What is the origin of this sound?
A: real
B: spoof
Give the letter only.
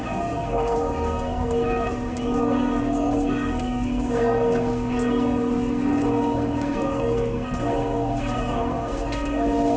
B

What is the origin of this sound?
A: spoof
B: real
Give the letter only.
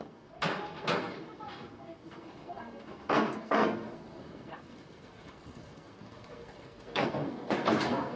A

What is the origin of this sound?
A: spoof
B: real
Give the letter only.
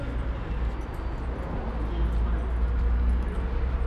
B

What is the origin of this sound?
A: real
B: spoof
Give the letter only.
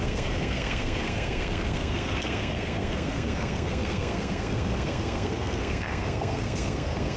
B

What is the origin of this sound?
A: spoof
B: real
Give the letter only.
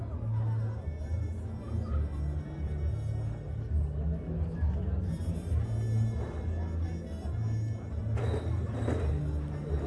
B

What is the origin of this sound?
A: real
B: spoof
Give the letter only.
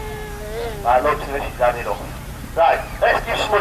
A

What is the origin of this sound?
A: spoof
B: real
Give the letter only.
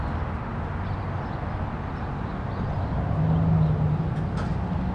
B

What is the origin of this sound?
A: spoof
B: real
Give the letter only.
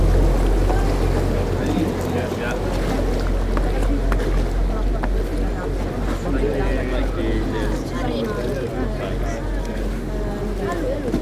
B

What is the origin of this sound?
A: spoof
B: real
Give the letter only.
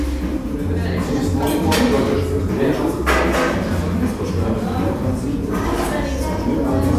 B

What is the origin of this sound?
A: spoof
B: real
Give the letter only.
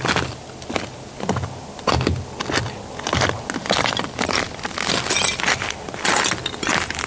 B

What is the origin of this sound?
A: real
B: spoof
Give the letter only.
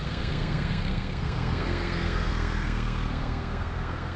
B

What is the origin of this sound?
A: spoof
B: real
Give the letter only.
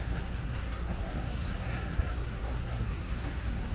A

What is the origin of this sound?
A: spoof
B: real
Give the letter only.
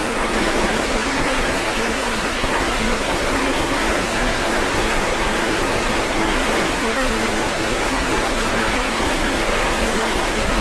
A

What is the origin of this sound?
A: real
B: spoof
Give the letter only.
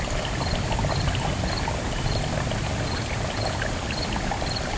A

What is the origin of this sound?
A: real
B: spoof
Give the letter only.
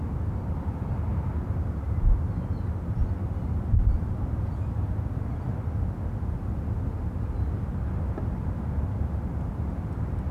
A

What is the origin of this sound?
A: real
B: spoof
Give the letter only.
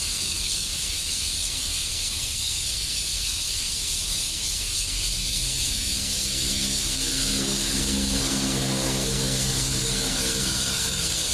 B